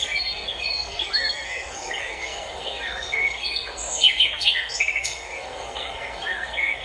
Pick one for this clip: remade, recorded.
remade